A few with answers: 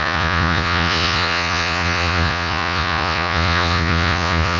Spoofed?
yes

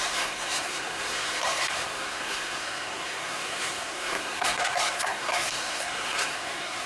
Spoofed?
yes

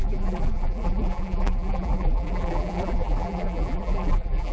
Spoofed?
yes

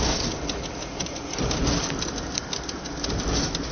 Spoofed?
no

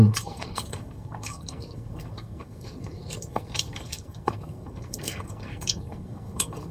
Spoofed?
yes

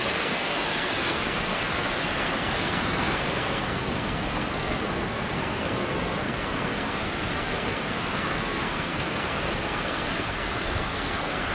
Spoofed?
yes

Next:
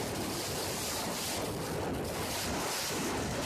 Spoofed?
no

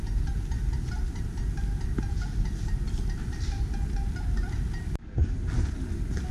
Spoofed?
no